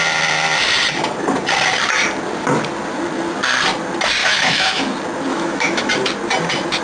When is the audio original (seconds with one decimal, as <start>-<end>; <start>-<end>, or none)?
0.0-4.2; 4.8-5.3; 5.9-6.8